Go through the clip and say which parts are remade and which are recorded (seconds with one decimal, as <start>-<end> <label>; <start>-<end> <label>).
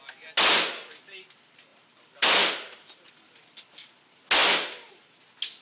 0.0-1.7 recorded; 1.7-3.2 remade; 3.2-4.4 recorded; 4.4-5.0 remade; 5.0-5.6 recorded